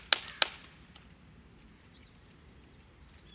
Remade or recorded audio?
recorded